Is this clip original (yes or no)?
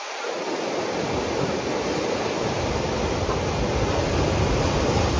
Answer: yes